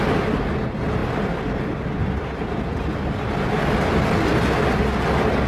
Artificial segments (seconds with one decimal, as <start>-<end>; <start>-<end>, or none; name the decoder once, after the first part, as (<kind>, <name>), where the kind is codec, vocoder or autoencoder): 1.0-3.1 (vocoder, BigVGAN v2)

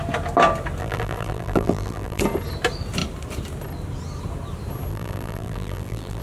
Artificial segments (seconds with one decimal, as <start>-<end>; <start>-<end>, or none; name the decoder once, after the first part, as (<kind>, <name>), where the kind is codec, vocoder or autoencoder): 0.8-2.2 (vocoder, BigVGAN v2); 4.9-6.2

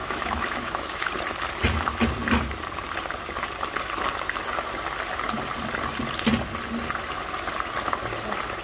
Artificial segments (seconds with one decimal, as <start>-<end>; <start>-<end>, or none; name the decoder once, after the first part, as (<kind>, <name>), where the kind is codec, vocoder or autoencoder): 0.0-1.1 (autoencoder, DAC-VAE)